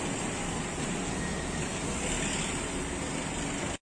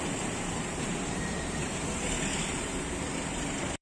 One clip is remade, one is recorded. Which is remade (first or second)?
second